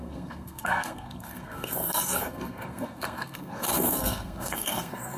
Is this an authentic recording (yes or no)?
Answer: no